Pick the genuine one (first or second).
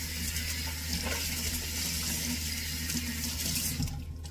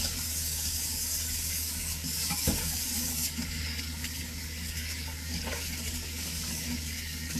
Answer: first